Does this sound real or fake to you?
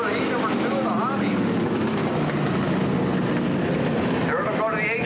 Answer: real